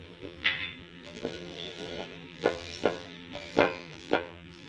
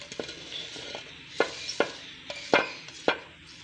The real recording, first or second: second